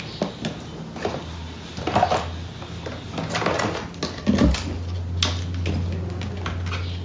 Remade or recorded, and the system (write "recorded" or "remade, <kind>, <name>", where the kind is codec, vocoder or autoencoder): recorded